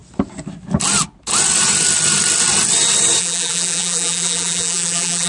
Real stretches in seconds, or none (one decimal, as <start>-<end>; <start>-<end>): 0.0-3.2